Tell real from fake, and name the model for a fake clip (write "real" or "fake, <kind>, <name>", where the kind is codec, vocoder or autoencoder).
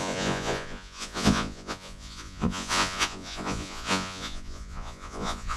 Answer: fake, vocoder, Vocos